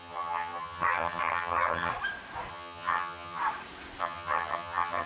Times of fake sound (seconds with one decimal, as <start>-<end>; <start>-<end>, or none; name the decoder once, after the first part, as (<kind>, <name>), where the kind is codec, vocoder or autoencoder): 0.0-1.9 (vocoder, HiFi-GAN); 2.5-3.4; 4.0-5.1